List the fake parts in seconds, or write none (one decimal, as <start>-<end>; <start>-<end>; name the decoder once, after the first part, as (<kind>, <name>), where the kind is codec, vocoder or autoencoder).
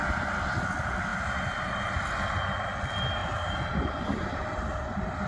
1.1-2.1 (vocoder, BigVGAN v2); 3.2-5.3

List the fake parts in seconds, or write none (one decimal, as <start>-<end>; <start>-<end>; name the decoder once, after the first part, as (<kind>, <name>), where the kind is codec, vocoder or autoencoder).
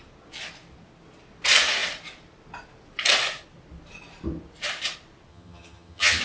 5.3-6.2 (vocoder, HiFi-GAN)